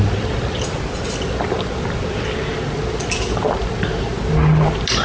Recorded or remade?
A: recorded